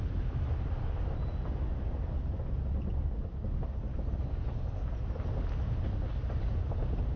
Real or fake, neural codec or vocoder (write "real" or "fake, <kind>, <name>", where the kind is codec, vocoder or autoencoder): real